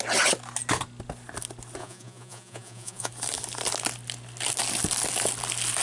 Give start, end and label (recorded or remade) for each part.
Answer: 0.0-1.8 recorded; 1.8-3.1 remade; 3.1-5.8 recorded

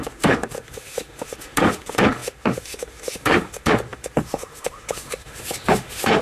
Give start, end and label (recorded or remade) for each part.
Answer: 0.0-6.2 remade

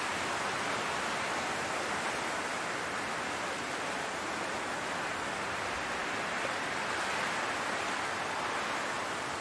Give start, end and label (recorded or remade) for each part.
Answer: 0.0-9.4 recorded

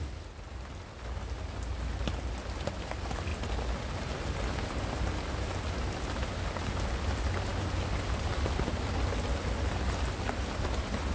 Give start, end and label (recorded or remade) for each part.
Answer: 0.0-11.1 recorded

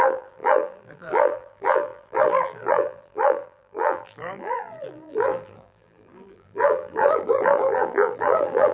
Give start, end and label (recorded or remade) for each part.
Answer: 0.0-8.7 remade

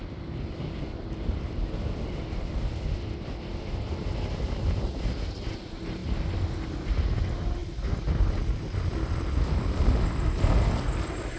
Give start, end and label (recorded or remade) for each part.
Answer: 0.0-11.4 recorded